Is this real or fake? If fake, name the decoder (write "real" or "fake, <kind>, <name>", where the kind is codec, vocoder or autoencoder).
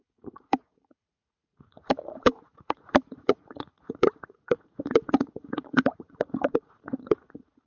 fake, vocoder, Vocos